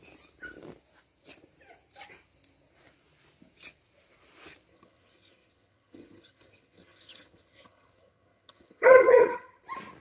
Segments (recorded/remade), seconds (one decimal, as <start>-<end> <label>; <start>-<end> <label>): 0.0-4.7 recorded; 4.7-9.6 remade; 9.6-10.0 recorded